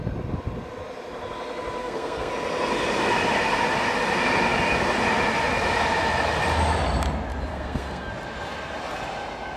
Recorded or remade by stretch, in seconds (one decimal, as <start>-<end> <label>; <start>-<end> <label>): 0.0-1.8 recorded; 1.8-2.3 remade; 2.3-7.5 recorded; 7.5-8.1 remade; 8.1-9.6 recorded